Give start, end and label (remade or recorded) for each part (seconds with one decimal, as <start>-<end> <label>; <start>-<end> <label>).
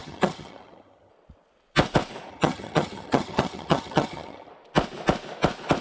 0.0-1.1 remade; 1.1-2.3 recorded; 2.3-4.5 remade; 4.5-5.8 recorded